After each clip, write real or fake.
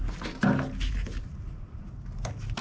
real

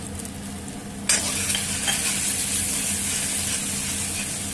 real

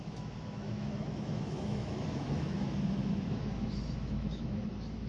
fake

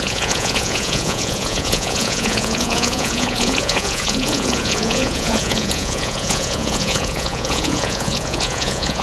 fake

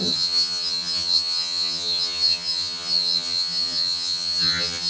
fake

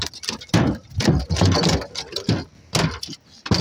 real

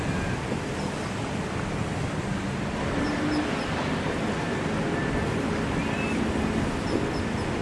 real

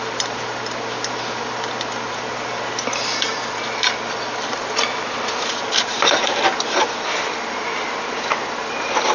real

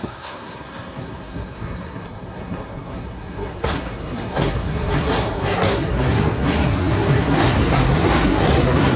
fake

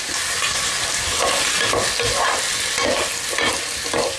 real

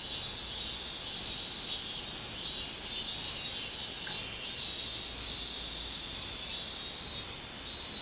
real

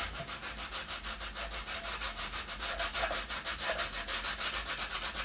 real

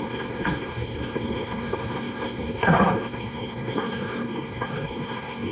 fake